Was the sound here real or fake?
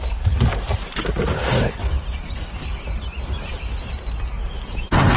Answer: real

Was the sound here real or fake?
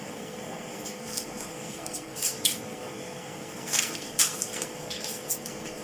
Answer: fake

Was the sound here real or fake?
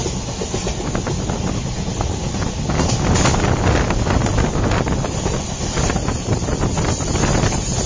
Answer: real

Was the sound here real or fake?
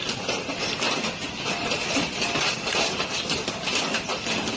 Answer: real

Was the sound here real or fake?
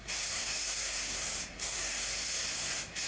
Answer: fake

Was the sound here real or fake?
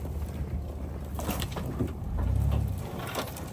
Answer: real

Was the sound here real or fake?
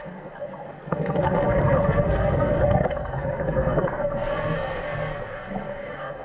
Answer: fake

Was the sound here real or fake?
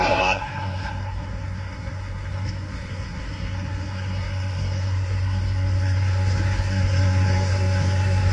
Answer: fake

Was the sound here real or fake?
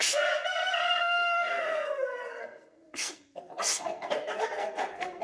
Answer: fake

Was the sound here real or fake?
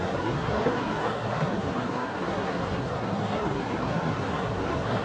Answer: fake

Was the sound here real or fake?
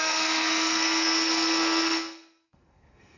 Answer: fake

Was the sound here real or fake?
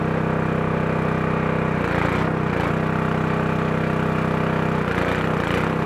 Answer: real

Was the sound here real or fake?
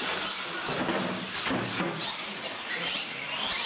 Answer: real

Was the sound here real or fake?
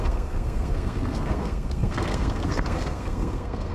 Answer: fake